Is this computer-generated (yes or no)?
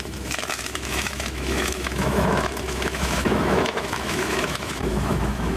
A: yes